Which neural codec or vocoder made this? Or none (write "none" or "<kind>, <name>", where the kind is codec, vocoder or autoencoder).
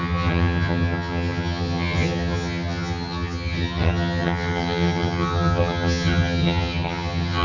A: vocoder, HiFi-GAN